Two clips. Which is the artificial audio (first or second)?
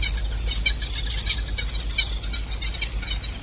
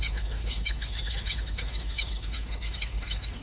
second